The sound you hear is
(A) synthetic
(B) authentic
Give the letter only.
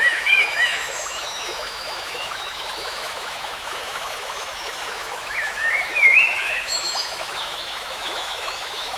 A